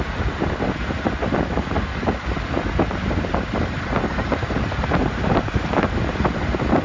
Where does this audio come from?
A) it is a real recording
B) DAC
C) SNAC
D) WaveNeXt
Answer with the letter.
A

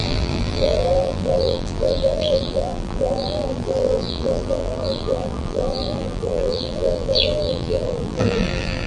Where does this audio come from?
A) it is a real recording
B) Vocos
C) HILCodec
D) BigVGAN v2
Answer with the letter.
D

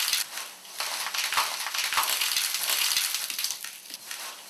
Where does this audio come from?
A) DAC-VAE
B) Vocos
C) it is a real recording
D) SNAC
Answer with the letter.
C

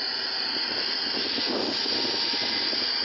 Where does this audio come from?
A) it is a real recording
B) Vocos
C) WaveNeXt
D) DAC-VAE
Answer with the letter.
A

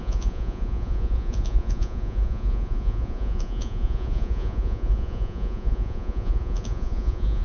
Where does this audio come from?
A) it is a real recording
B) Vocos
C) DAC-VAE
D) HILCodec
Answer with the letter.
B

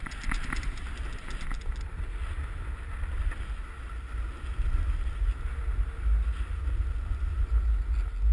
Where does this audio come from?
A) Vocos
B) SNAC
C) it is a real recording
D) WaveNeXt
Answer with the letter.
C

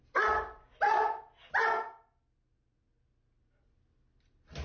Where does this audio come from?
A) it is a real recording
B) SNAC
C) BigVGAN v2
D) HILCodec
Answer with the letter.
A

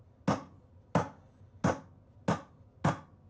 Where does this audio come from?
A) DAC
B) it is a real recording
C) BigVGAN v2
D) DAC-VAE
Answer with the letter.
B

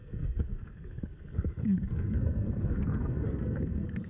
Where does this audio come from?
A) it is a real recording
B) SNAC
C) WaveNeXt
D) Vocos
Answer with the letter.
B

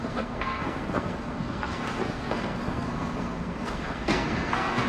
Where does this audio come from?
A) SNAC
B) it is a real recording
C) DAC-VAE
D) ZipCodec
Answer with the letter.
A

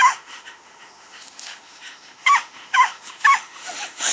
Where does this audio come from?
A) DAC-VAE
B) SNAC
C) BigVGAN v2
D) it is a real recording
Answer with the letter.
A